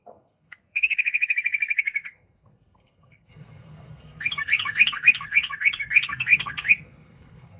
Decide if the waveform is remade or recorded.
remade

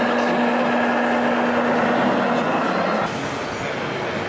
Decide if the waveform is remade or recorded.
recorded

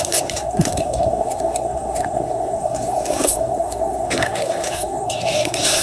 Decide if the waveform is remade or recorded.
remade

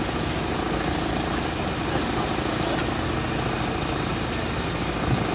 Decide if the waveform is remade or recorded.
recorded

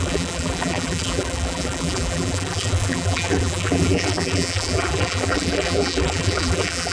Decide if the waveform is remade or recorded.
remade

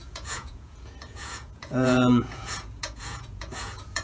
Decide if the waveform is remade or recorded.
remade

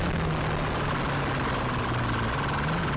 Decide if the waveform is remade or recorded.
recorded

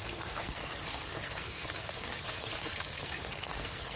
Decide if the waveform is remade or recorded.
remade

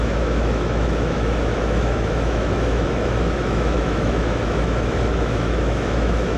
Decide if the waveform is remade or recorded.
remade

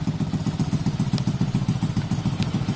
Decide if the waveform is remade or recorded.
recorded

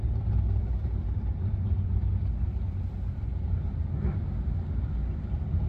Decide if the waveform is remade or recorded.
recorded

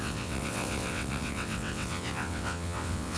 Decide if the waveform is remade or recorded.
remade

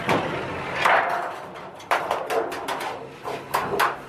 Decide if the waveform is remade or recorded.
recorded